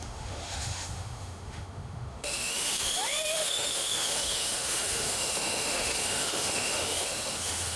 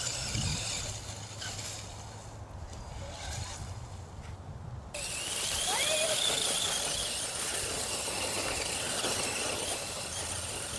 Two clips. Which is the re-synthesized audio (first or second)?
first